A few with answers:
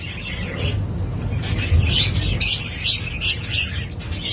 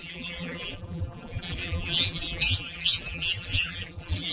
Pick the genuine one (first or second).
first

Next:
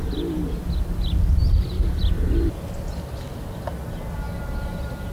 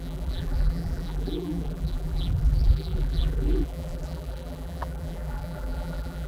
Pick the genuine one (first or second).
first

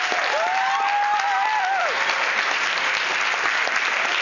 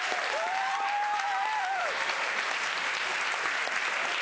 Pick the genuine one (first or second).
first